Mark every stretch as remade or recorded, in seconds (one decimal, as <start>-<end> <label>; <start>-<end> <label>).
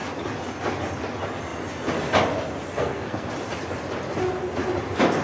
0.0-2.7 recorded; 2.7-3.3 remade; 3.3-5.2 recorded